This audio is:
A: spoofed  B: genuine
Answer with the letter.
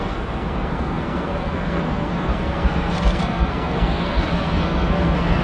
A